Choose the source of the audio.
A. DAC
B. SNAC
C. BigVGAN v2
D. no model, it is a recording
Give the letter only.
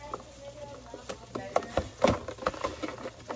D